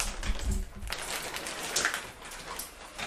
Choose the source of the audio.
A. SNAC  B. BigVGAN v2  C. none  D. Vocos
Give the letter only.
C